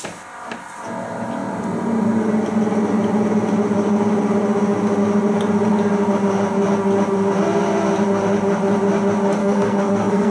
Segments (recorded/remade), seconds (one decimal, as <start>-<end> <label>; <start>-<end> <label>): 0.0-9.4 recorded; 9.4-10.3 remade